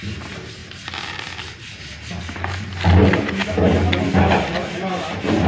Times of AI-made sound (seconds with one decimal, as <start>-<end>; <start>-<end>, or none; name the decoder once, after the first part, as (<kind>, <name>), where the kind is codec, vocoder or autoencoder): none